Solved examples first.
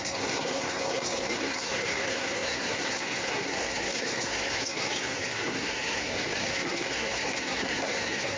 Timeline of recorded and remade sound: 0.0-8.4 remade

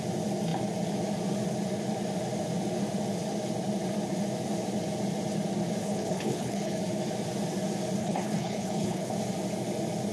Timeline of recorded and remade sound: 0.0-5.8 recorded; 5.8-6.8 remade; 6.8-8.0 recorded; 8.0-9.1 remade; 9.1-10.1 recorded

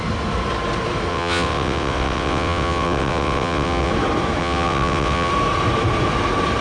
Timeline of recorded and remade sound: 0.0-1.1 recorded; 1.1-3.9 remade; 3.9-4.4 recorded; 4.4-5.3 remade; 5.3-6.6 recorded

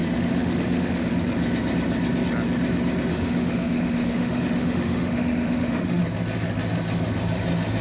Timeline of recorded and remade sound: 0.0-1.1 remade; 1.1-3.1 recorded; 3.1-6.0 remade; 6.0-7.8 recorded